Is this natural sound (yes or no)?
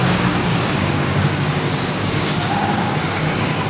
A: no